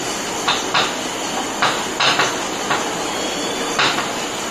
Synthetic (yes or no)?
no